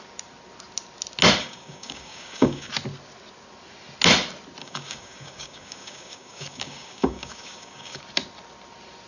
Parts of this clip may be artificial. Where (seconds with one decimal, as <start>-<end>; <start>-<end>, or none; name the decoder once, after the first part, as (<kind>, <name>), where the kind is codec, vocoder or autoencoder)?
1.4-2.7 (codec, DAC); 4.6-8.0